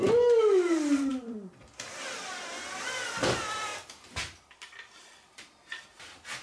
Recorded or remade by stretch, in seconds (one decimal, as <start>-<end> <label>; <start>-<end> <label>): 0.0-1.1 recorded; 1.1-2.3 remade; 2.3-6.4 recorded